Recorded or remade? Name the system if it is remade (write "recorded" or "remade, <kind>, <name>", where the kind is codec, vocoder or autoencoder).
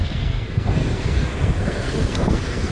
remade, codec, SNAC